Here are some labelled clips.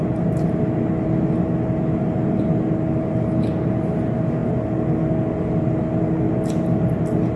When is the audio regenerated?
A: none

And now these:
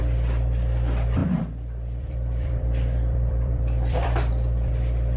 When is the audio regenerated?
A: 1.2-4.3

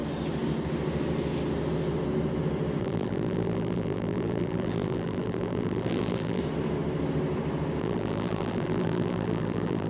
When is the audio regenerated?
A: 2.8-6.4; 7.8-9.9

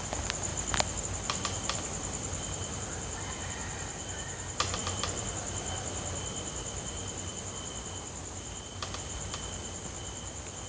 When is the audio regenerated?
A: 0.0-0.5; 1.0-4.8; 7.3-10.7

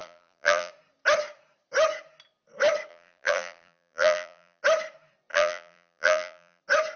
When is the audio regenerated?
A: 0.0-0.7; 2.9-4.6; 5.3-6.6

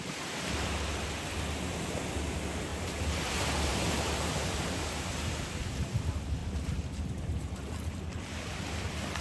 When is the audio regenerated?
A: 2.7-3.3; 3.7-5.6; 6.4-8.5

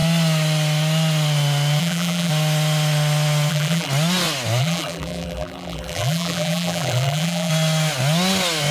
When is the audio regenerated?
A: 1.8-2.3; 3.5-3.9; 4.6-7.5

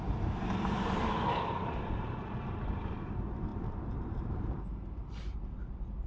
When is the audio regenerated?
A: 0.0-6.1